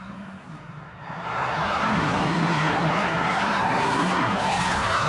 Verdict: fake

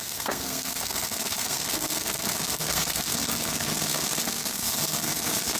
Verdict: fake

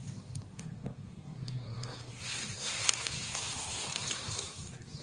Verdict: fake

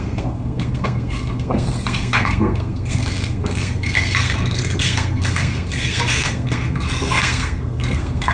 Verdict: fake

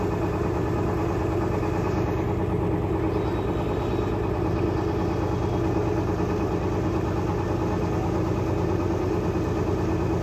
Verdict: real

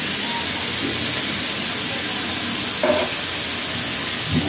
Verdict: real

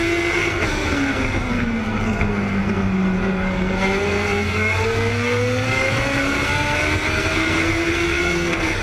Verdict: fake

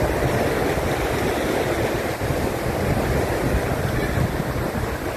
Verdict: real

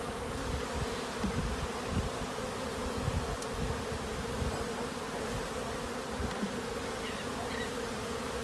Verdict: real